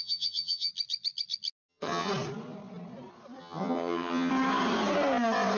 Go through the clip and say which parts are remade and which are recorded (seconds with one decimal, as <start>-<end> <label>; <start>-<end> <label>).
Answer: 0.0-0.7 remade; 0.7-1.7 recorded; 1.7-2.1 remade; 2.1-3.4 recorded; 3.4-4.3 remade; 4.3-5.6 recorded